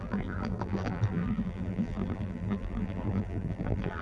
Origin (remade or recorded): remade